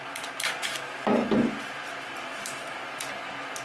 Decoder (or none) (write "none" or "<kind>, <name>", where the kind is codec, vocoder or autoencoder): none